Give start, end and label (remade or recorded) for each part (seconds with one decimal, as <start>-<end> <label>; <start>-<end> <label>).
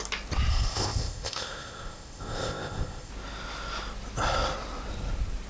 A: 0.0-0.5 recorded; 0.5-3.1 remade; 3.1-5.5 recorded